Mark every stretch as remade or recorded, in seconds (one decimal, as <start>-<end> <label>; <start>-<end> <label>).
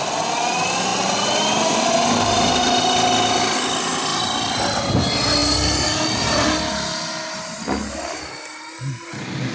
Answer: 0.0-9.5 recorded